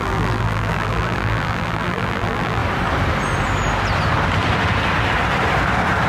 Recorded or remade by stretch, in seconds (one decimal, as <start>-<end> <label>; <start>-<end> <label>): 0.0-2.6 remade; 2.6-6.1 recorded